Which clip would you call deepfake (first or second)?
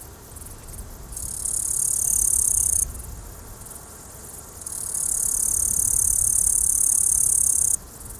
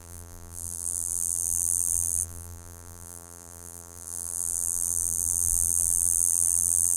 second